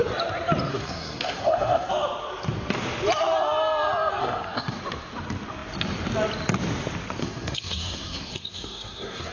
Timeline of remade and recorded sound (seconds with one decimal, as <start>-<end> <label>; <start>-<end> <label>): 0.0-0.7 recorded; 0.7-1.9 remade; 1.9-4.2 recorded; 4.2-4.8 remade; 4.8-7.2 recorded; 7.2-9.3 remade